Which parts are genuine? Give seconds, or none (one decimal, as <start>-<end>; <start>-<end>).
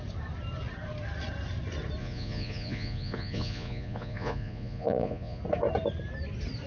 0.0-2.0; 5.4-6.7